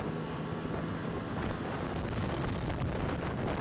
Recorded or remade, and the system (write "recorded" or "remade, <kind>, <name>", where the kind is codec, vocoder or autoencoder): recorded